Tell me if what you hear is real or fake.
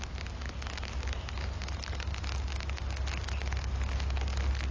real